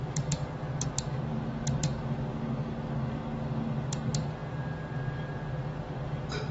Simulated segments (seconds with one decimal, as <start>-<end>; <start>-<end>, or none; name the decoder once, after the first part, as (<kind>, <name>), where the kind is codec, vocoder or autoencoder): none